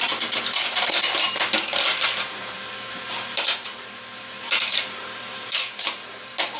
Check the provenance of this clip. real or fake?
fake